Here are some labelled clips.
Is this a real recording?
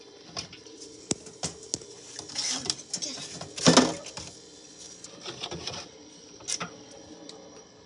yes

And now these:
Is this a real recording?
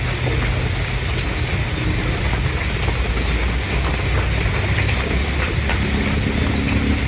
yes